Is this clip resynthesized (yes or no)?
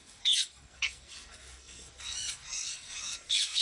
yes